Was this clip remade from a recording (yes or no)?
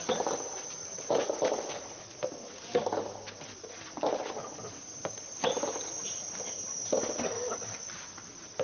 no